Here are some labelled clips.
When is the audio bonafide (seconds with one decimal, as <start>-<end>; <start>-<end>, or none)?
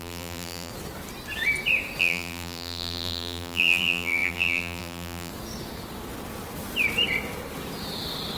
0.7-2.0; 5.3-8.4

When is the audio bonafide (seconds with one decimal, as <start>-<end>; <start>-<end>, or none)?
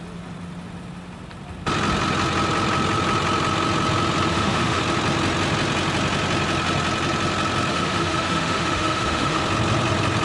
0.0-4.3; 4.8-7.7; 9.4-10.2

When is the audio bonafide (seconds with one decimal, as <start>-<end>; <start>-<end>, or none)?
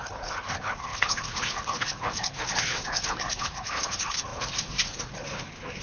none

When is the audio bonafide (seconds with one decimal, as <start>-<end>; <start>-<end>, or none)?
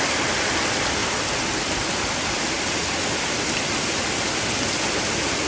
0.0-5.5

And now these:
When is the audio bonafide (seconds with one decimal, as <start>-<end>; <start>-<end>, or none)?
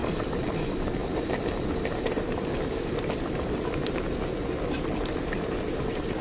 0.6-1.0; 3.9-6.2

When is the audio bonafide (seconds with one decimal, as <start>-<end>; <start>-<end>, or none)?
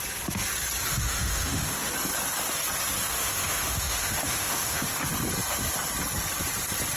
0.0-0.9; 1.9-3.1; 5.0-7.0